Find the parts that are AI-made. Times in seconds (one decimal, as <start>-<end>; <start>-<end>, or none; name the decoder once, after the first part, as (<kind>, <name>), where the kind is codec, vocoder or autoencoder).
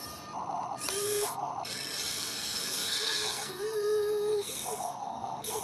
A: 1.0-1.5 (codec, SNAC); 2.1-5.6